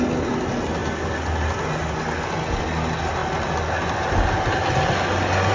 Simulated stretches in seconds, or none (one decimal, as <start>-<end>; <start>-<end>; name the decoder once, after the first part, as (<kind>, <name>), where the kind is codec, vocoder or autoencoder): none